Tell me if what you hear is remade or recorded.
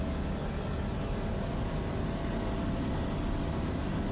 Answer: recorded